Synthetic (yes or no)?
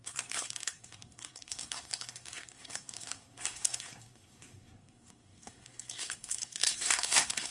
yes